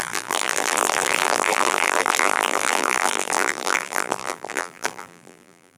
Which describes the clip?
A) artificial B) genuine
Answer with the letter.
A